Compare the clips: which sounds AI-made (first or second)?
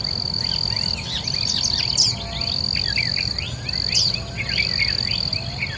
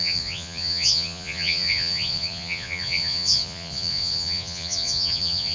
second